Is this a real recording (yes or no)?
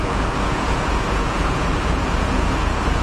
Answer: no